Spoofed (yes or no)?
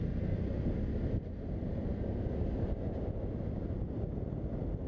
no